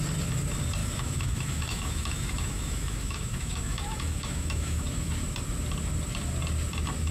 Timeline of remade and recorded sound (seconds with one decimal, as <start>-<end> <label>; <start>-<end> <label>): 0.0-0.8 recorded; 0.8-5.1 remade; 5.1-7.1 recorded